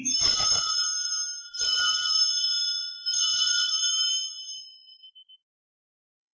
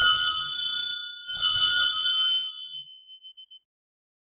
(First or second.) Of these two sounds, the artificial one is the first